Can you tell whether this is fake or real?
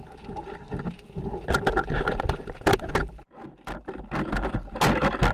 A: real